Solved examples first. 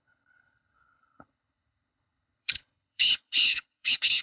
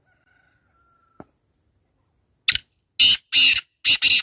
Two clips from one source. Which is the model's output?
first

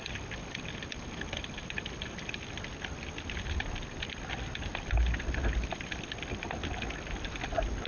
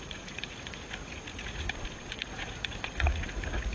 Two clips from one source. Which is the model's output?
second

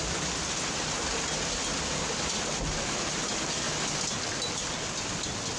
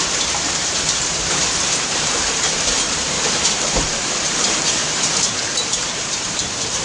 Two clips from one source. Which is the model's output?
second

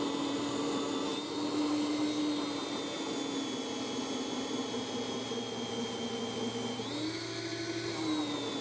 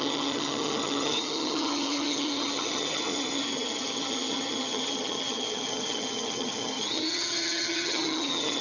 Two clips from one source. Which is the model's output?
second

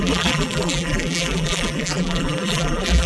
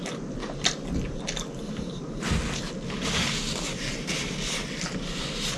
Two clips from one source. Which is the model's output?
first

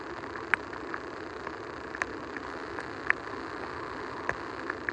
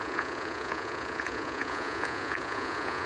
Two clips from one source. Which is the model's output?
second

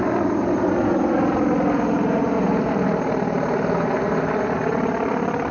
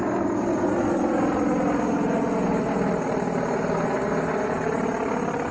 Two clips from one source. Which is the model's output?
first